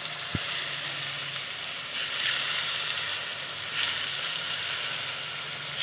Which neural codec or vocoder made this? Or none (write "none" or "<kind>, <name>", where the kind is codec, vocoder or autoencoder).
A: none